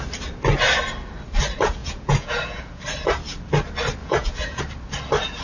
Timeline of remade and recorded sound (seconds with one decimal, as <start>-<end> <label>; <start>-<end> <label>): 0.0-1.8 recorded; 1.8-2.8 remade; 2.8-4.0 recorded; 4.0-4.6 remade; 4.6-5.4 recorded